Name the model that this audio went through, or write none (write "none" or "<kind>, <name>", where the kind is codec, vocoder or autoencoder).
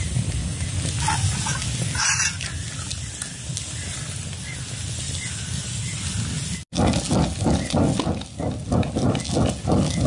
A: none